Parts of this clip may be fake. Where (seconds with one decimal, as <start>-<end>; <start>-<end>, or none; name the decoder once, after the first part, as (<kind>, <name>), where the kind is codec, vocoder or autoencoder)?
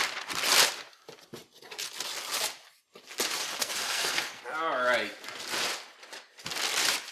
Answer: 3.5-4.4 (codec, SNAC)